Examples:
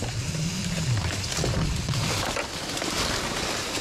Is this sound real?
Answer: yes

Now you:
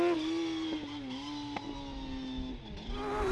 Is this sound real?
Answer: yes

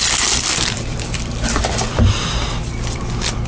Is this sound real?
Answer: no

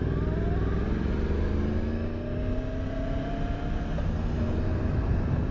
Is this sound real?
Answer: yes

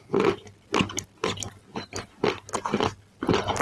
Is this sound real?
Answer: yes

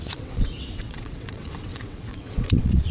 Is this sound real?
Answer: no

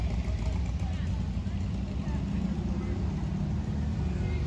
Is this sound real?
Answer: yes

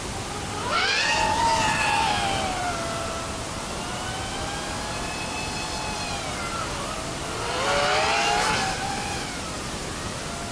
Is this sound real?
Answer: yes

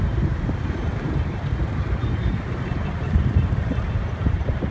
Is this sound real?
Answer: no